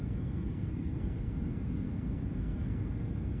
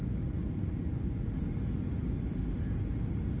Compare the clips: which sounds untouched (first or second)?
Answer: second